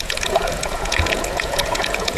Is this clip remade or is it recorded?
remade